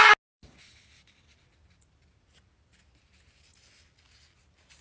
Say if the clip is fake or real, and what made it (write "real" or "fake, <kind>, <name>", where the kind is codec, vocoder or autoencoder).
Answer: real